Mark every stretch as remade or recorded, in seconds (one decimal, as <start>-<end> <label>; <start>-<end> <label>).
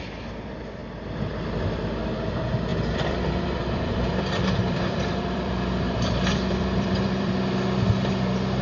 0.0-0.8 recorded; 0.8-1.8 remade; 1.8-2.7 recorded; 2.7-7.3 remade; 7.3-8.6 recorded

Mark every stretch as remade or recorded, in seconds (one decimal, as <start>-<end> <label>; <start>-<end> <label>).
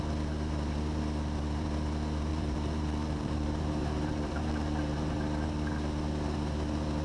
0.0-2.3 recorded; 2.3-5.1 remade; 5.1-7.0 recorded